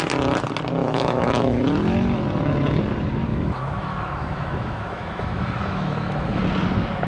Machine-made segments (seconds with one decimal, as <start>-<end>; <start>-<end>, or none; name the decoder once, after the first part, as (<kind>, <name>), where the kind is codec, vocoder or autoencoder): 0.8-1.6 (autoencoder, DAC-VAE); 3.3-6.4